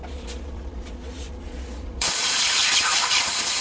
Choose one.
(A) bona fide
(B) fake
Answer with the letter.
B